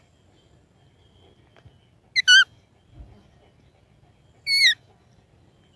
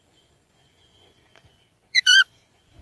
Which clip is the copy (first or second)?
second